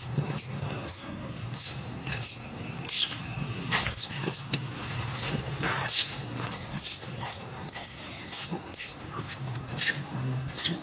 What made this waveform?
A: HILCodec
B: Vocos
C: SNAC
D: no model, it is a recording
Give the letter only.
C